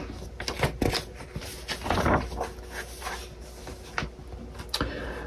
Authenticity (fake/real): real